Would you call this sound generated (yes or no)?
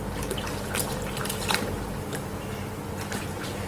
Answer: no